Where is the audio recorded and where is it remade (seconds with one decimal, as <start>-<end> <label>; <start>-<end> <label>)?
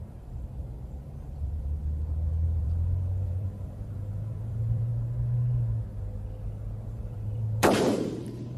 0.0-1.8 remade; 1.8-2.6 recorded; 2.6-4.9 remade; 4.9-6.8 recorded; 6.8-8.6 remade